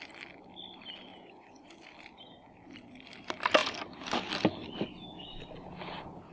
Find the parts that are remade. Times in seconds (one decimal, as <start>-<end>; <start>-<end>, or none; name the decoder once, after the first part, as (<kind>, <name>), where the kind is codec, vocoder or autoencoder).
1.1-1.7 (vocoder, Vocos)